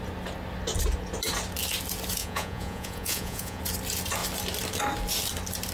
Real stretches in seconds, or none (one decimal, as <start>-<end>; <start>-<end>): 0.0-2.2; 3.6-5.7